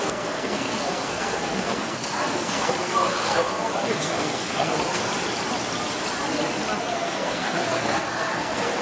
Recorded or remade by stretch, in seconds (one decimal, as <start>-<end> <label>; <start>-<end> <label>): 0.0-5.1 remade; 5.1-6.8 recorded; 6.8-8.8 remade